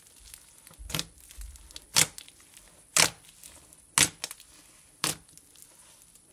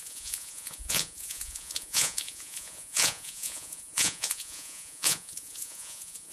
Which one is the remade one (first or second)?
second